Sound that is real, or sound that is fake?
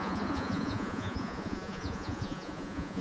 fake